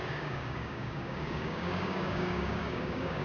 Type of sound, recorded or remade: remade